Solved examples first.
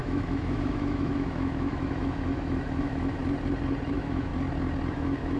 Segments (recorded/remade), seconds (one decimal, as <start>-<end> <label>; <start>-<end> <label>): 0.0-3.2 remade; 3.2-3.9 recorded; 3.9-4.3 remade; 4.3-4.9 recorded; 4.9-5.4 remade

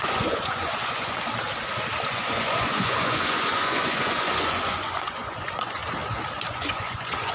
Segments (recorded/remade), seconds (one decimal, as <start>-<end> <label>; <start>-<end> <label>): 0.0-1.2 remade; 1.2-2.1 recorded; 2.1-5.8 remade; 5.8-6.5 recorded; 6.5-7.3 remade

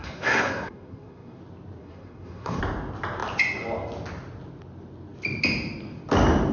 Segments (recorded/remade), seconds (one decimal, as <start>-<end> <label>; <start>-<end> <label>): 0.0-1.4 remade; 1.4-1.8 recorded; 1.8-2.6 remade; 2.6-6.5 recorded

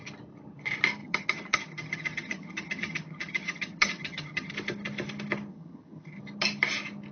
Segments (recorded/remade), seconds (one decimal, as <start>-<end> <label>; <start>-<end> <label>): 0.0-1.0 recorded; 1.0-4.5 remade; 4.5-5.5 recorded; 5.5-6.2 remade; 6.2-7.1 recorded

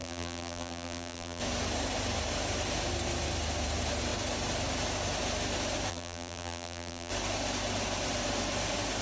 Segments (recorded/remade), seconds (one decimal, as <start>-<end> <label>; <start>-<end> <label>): 0.0-1.4 remade; 1.4-5.9 recorded; 5.9-7.1 remade; 7.1-9.0 recorded

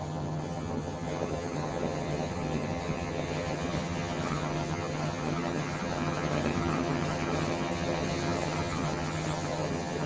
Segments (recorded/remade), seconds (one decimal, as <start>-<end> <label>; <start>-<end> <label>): 0.0-10.1 remade